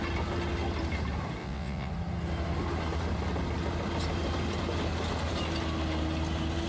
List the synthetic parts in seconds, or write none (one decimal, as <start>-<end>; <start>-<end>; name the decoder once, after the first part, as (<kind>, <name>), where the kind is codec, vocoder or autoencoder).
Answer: 1.4-1.9 (vocoder, WaveNeXt)

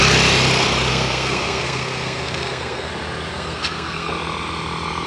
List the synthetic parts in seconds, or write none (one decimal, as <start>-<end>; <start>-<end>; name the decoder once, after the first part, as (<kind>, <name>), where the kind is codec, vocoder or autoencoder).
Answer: 0.9-2.9 (codec, SNAC); 3.3-4.1